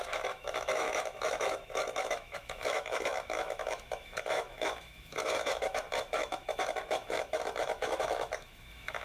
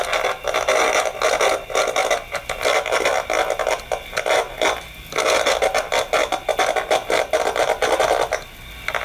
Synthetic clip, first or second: first